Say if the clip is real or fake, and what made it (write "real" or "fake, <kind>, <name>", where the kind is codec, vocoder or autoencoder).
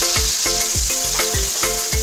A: real